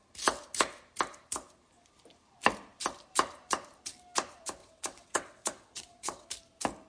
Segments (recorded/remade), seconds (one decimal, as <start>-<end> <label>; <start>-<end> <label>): 0.0-4.6 recorded; 4.6-6.3 remade; 6.3-6.9 recorded